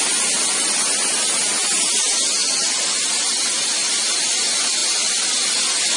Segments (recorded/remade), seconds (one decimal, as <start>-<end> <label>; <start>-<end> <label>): 0.0-6.0 recorded